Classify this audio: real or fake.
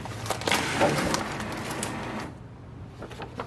real